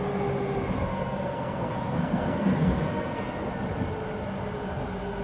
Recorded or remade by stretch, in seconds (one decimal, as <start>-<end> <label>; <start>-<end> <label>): 0.0-0.9 recorded; 0.9-3.5 remade; 3.5-5.2 recorded